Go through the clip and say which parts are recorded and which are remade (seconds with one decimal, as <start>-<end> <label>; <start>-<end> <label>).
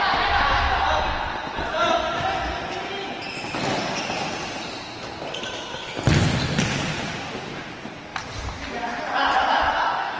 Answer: 0.0-2.9 recorded; 2.9-6.1 remade; 6.1-8.1 recorded; 8.1-9.0 remade; 9.0-10.2 recorded